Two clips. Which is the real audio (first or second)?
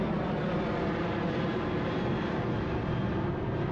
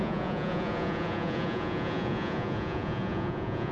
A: first